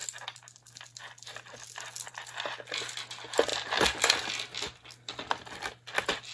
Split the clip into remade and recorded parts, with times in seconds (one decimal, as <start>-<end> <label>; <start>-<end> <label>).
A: 0.0-6.3 recorded